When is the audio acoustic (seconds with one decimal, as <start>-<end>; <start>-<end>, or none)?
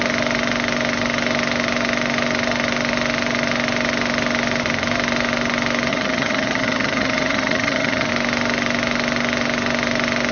0.0-5.9; 8.1-10.3